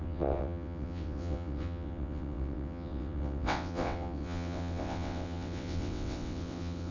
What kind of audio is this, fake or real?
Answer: fake